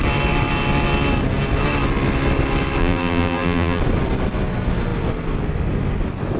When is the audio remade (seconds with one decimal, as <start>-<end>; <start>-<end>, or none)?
2.8-3.8